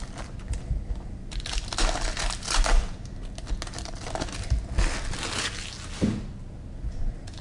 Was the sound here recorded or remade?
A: recorded